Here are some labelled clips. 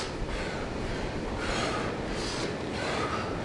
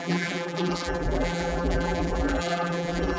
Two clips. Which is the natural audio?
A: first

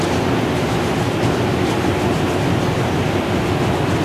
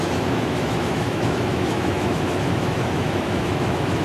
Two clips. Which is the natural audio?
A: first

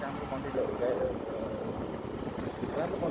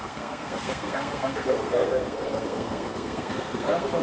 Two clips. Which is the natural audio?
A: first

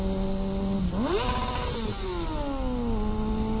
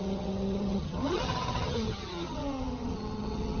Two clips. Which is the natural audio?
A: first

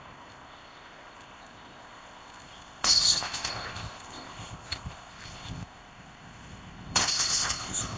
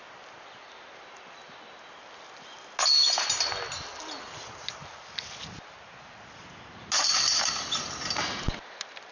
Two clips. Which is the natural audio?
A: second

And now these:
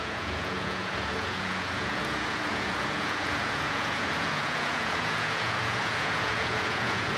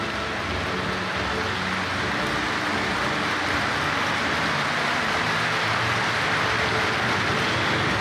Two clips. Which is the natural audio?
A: second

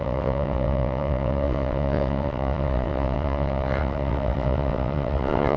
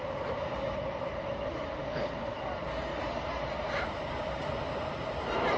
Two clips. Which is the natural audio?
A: second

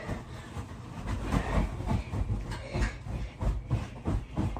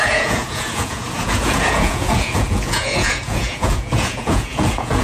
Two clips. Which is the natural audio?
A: first